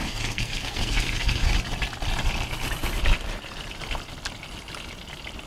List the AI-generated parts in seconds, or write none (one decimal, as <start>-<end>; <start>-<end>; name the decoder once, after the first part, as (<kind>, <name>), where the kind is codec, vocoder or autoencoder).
0.0-1.5 (codec, SNAC)